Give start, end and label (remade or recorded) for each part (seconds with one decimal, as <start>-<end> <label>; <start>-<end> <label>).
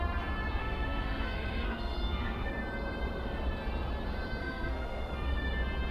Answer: 0.0-0.6 recorded; 0.6-2.5 remade; 2.5-4.4 recorded; 4.4-5.1 remade; 5.1-5.9 recorded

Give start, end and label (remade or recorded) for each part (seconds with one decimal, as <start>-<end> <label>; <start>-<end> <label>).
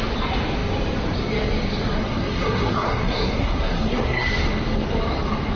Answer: 0.0-2.0 recorded; 2.0-4.3 remade; 4.3-5.6 recorded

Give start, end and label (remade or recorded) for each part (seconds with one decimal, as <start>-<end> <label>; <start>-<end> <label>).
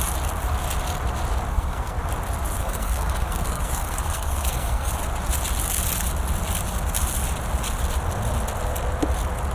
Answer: 0.0-1.5 recorded; 1.5-2.0 remade; 2.0-2.6 recorded; 2.6-4.9 remade; 4.9-9.5 recorded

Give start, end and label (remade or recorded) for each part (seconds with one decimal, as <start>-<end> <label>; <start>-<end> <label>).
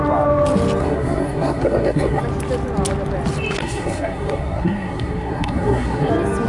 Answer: 0.0-0.8 recorded; 0.8-2.2 remade; 2.2-3.6 recorded; 3.6-6.1 remade; 6.1-6.5 recorded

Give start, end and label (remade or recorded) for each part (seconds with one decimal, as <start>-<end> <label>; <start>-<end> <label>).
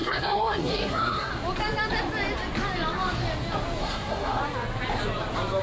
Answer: 0.0-1.3 remade; 1.3-3.8 recorded; 3.8-4.4 remade; 4.4-5.6 recorded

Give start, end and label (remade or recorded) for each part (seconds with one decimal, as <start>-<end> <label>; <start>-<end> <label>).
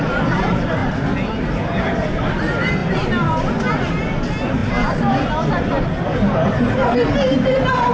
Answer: 0.0-7.9 recorded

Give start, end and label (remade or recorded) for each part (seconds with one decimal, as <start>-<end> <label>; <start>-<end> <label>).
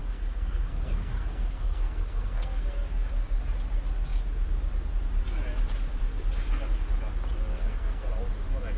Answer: 0.0-3.1 remade; 3.1-7.5 recorded; 7.5-8.1 remade; 8.1-8.8 recorded